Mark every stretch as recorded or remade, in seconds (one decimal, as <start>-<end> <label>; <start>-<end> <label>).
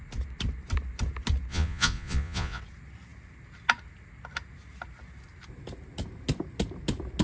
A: 0.0-1.5 recorded; 1.5-2.6 remade; 2.6-7.2 recorded